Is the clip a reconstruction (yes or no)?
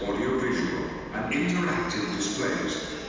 no